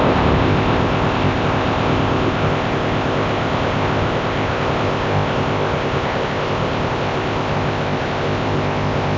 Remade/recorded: remade